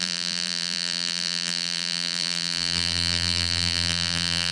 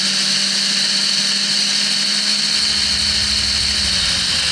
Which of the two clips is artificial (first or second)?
first